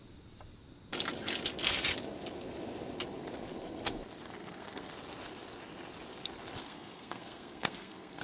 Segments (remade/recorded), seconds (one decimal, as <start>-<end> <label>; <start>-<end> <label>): 0.0-4.4 recorded; 4.4-4.9 remade; 4.9-6.6 recorded; 6.6-8.2 remade